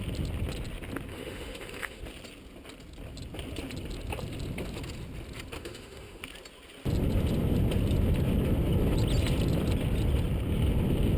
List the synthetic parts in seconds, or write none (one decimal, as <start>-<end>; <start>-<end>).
1.1-2.0; 5.6-6.2